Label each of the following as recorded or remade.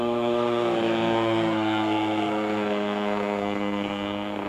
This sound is remade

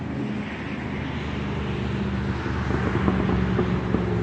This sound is recorded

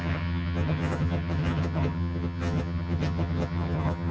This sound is remade